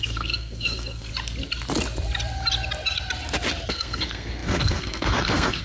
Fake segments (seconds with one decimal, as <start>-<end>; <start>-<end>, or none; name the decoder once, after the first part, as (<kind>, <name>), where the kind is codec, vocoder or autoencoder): 0.0-1.1 (codec, SNAC); 3.7-5.6